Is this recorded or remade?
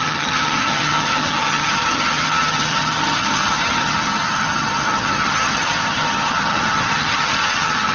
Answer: remade